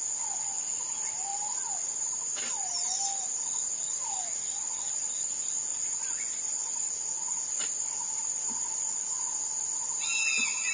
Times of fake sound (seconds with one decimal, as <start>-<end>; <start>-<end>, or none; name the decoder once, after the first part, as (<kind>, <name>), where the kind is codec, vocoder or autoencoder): 5.7-6.9 (vocoder, Vocos)